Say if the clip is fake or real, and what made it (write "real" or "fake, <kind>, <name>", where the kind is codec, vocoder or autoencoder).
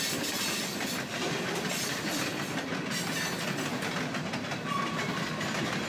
real